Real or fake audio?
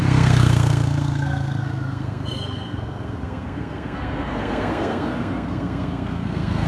fake